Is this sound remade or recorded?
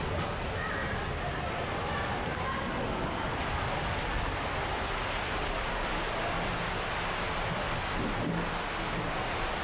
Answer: recorded